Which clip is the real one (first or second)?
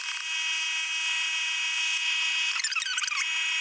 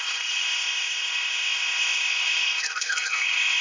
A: first